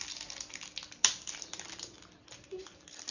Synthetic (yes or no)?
yes